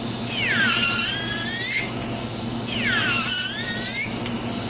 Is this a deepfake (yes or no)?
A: no